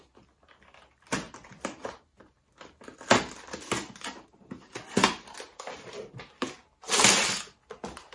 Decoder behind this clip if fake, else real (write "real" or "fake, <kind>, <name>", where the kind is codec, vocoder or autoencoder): real